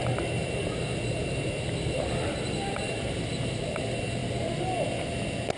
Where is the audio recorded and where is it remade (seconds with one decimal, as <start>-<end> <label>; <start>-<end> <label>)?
0.0-0.4 recorded; 0.4-3.8 remade; 3.8-5.6 recorded